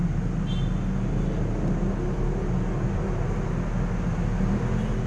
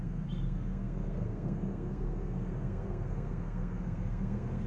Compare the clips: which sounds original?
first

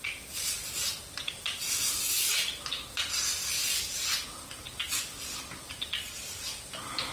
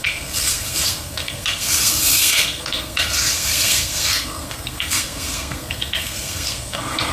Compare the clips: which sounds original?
first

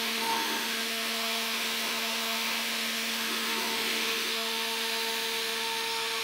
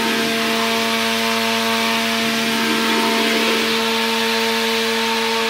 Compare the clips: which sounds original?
second